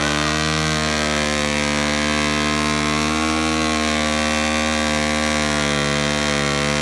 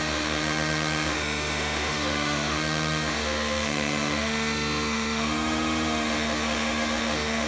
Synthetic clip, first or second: second